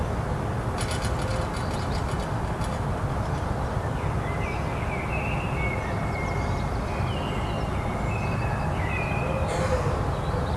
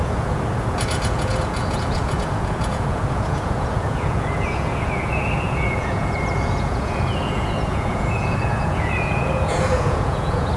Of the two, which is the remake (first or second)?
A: second